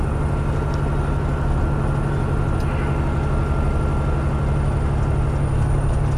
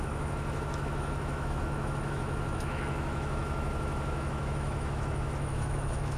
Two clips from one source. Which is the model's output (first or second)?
second